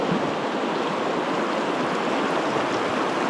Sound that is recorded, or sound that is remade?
recorded